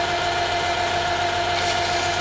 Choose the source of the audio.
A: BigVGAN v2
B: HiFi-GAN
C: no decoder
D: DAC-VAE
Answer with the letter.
C